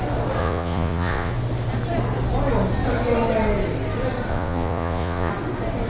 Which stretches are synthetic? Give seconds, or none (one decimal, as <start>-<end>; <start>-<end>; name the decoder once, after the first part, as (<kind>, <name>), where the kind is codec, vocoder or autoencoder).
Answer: 0.4-1.3 (vocoder, Vocos); 4.3-5.3

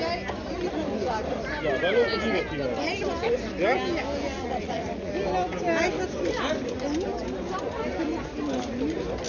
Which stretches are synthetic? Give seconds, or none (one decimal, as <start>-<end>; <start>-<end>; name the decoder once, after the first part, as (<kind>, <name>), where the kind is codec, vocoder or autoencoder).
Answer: 4.3-5.1 (vocoder, Vocos)

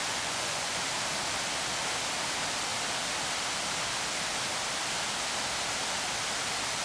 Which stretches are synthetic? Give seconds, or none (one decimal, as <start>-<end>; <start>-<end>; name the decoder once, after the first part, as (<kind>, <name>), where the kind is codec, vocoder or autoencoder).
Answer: 0.0-0.8 (vocoder, Vocos)

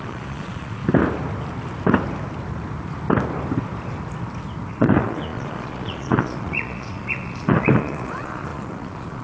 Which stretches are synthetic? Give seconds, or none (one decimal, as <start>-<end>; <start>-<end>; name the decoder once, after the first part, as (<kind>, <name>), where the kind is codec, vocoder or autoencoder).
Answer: 0.0-0.8 (vocoder, Vocos); 4.7-9.2

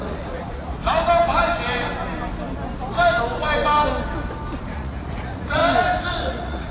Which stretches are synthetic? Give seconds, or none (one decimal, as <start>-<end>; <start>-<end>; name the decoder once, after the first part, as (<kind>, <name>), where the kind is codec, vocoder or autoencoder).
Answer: 0.0-0.8 (vocoder, Vocos); 4.6-5.6; 6.2-6.7

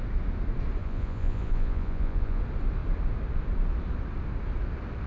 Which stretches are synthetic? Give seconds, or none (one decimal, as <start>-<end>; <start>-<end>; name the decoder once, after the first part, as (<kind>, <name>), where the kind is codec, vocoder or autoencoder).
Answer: 0.8-2.4 (vocoder, Vocos)

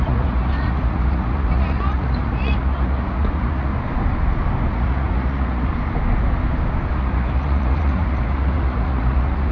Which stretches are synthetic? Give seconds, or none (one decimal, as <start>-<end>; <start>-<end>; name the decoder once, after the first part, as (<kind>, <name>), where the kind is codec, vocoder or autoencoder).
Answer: 0.0-3.7 (vocoder, Vocos); 4.7-5.7; 6.9-9.5

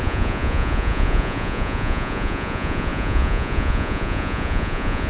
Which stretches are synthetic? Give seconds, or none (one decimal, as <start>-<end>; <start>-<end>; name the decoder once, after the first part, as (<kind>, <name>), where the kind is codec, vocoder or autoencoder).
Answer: 0.0-5.1 (vocoder, Vocos)